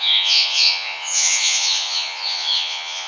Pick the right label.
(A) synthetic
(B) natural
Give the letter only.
A